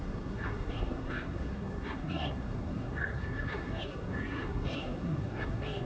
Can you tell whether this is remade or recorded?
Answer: remade